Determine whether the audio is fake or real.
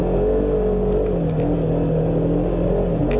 real